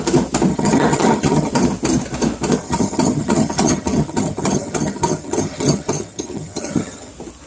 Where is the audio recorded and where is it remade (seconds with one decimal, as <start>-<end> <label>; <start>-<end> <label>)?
0.0-0.5 recorded; 0.5-1.5 remade; 1.5-2.6 recorded; 2.6-7.1 remade; 7.1-7.5 recorded